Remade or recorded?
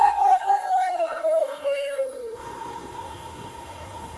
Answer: remade